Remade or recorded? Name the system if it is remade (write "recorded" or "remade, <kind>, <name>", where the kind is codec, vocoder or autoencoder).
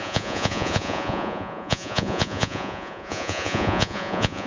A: remade, vocoder, Vocos